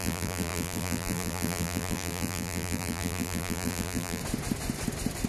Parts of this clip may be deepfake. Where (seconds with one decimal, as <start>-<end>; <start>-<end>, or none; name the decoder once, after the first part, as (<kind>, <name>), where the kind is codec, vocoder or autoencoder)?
0.0-4.2 (vocoder, BigVGAN v2)

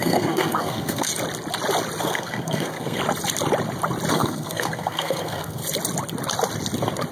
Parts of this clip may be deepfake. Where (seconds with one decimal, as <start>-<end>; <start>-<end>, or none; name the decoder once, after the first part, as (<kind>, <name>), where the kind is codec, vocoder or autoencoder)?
0.0-1.1 (codec, SNAC); 2.0-3.0; 4.1-5.6

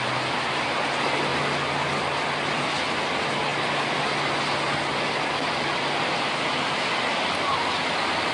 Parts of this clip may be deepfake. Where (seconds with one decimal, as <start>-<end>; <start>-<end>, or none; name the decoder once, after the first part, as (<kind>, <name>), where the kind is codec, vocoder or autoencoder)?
none

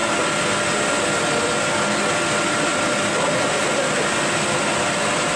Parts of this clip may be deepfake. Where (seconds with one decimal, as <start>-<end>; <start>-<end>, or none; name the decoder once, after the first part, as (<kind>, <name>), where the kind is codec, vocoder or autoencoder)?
none

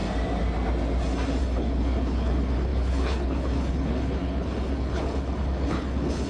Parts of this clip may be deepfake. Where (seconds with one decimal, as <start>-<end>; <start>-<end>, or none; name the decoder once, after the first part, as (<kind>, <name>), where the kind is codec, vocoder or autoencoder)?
1.4-6.3 (codec, HILCodec)